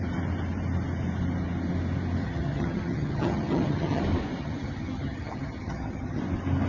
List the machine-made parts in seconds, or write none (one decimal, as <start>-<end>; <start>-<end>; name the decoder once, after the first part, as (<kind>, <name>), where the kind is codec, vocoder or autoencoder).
2.2-4.0 (vocoder, HiFi-GAN); 4.4-6.2